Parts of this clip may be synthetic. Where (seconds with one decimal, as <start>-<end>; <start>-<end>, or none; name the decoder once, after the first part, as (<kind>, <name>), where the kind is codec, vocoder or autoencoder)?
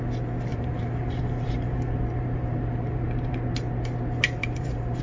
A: 0.5-3.3 (vocoder, BigVGAN v2); 4.4-5.0